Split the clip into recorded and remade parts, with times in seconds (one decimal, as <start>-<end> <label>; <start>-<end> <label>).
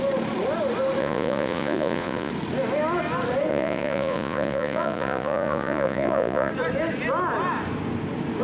0.0-1.0 recorded; 1.0-2.3 remade; 2.3-3.5 recorded; 3.5-6.5 remade; 6.5-8.4 recorded